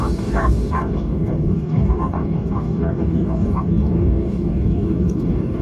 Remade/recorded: remade